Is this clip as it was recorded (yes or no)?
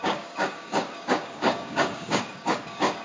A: no